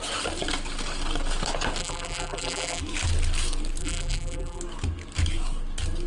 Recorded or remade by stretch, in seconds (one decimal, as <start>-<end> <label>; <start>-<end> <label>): 0.0-1.8 recorded; 1.8-2.8 remade; 2.8-3.8 recorded; 3.8-4.6 remade; 4.6-6.1 recorded